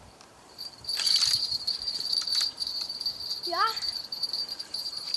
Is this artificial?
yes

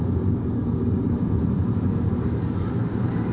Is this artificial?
yes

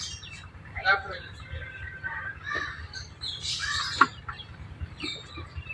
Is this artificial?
yes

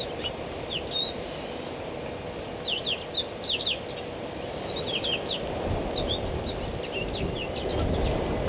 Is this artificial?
no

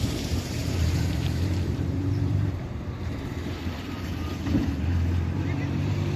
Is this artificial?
yes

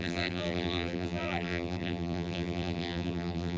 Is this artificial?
yes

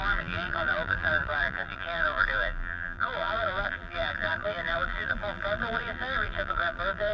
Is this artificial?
yes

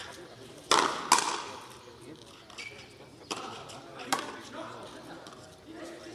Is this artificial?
no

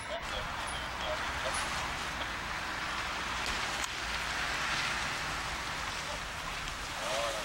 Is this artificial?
no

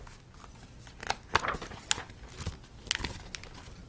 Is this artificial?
no